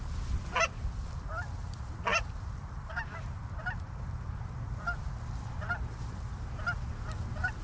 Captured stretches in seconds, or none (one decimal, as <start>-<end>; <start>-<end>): 1.3-1.8